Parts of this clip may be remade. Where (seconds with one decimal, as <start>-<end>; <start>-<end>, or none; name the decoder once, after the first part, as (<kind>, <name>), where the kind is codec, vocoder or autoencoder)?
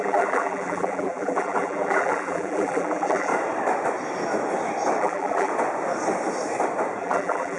0.0-3.3 (vocoder, BigVGAN v2); 5.0-5.5; 7.0-7.6